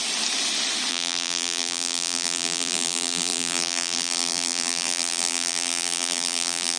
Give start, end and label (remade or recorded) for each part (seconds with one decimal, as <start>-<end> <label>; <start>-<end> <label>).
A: 0.0-0.9 recorded; 0.9-6.8 remade